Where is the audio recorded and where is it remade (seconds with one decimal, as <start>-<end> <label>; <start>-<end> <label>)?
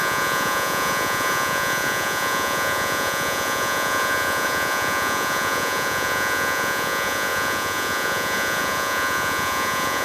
0.0-10.0 remade